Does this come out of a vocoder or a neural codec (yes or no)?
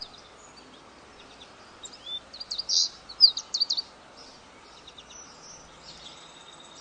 no